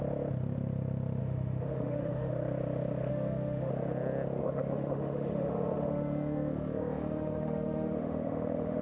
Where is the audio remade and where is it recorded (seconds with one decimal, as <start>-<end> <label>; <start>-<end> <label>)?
0.0-1.2 recorded; 1.2-2.3 remade; 2.3-3.1 recorded; 3.1-3.7 remade; 3.7-4.4 recorded; 4.4-8.8 remade